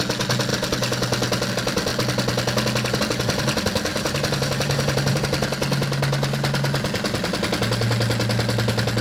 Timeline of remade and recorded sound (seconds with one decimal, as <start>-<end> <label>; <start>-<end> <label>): 0.0-3.9 recorded; 3.9-5.2 remade; 5.2-9.0 recorded